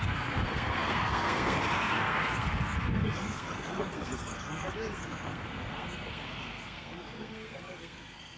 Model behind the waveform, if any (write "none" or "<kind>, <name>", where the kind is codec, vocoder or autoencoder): codec, SNAC